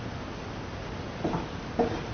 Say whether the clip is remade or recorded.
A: recorded